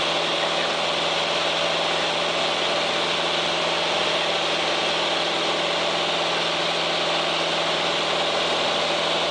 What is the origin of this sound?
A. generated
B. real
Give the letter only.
B